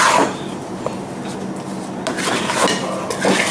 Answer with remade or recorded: recorded